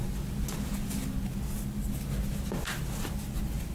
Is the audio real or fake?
real